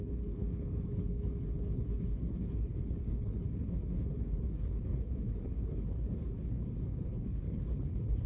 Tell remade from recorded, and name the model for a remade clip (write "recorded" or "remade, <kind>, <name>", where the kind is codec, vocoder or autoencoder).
remade, codec, HILCodec